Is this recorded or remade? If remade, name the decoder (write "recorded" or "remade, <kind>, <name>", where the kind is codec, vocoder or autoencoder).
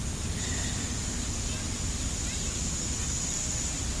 recorded